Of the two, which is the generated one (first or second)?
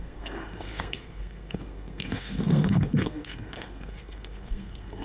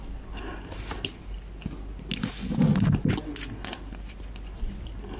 first